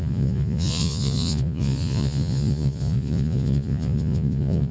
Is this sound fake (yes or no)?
yes